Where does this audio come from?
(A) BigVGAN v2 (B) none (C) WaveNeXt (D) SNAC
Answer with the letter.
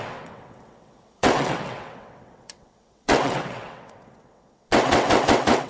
C